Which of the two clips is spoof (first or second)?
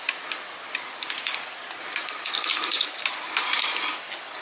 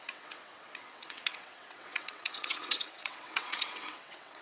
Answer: second